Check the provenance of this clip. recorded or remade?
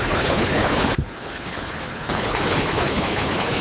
remade